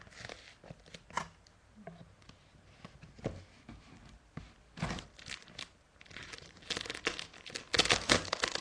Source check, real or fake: real